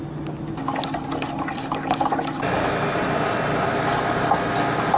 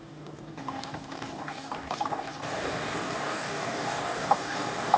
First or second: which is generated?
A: second